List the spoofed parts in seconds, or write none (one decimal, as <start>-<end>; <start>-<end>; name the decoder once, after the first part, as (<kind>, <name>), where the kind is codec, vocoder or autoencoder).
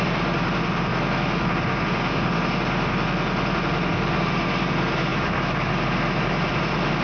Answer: 0.9-1.5 (autoencoder, DAC-VAE); 5.1-5.7